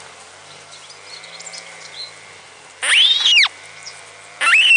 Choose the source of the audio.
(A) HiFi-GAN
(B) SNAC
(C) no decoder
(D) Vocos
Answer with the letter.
C